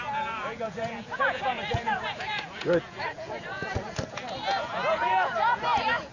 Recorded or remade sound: remade